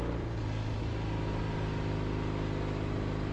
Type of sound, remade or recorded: recorded